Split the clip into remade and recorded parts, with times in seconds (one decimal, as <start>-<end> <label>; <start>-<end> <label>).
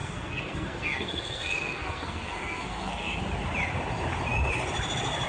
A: 0.0-3.2 remade; 3.2-5.3 recorded